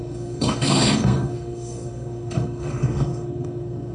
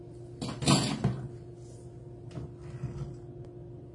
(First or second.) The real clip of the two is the second